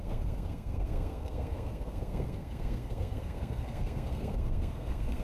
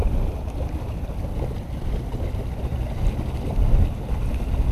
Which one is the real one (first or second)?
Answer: second